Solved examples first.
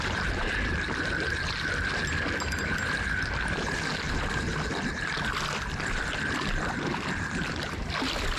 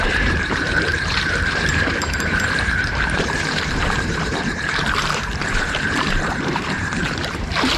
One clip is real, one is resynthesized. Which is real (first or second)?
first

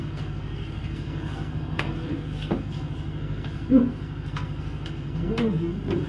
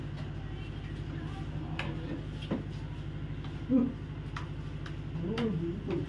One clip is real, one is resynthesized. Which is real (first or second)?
second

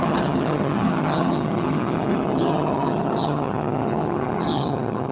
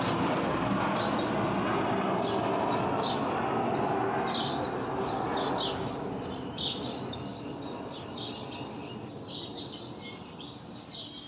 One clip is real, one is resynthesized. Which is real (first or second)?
second